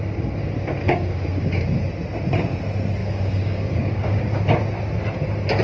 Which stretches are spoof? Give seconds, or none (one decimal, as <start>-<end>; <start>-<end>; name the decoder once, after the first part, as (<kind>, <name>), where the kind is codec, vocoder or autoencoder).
0.8-1.8 (codec, DAC); 3.0-4.4